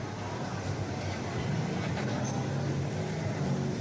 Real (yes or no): yes